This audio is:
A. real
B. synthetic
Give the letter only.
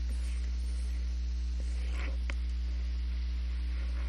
A